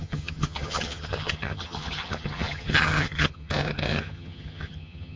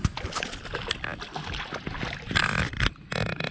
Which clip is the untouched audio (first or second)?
second